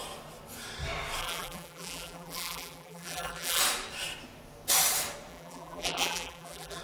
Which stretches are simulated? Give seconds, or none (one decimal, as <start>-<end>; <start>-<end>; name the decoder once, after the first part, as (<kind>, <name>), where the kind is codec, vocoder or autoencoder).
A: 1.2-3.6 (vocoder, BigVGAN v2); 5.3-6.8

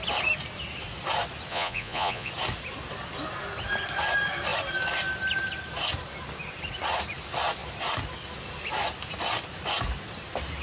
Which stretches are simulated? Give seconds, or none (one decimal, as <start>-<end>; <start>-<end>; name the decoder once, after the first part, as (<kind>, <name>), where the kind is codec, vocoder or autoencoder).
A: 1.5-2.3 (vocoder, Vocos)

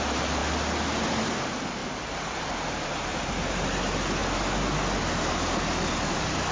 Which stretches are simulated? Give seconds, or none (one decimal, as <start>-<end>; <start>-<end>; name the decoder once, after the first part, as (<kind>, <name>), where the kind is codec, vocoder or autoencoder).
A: none

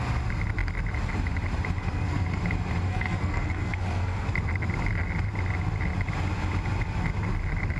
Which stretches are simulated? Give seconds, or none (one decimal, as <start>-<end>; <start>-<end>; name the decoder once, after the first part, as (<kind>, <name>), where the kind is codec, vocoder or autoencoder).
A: 1.8-2.4 (codec, SNAC); 2.9-4.3

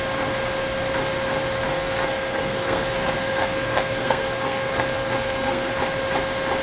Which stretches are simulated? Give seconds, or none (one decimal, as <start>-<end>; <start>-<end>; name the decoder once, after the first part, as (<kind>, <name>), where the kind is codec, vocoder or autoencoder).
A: 1.7-5.7 (codec, SNAC)